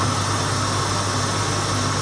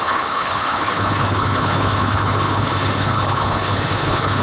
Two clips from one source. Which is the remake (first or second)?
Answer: second